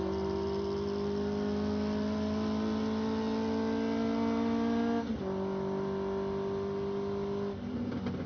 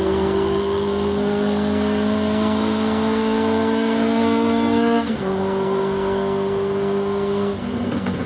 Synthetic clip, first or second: second